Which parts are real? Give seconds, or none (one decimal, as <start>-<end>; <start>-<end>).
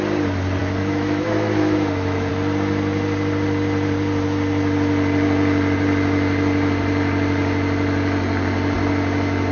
0.0-0.6; 2.3-9.5